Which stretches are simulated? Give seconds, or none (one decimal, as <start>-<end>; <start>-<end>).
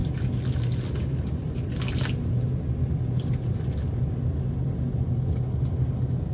none